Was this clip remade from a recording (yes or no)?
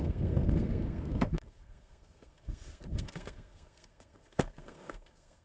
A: yes